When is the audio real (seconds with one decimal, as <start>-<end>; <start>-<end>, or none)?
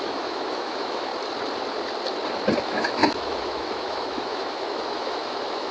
1.1-2.6